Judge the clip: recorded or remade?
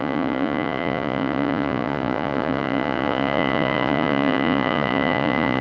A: remade